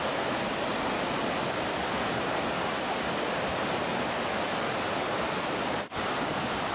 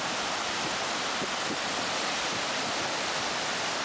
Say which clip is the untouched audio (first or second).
first